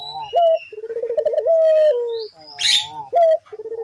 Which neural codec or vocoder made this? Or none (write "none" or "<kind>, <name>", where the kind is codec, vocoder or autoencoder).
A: none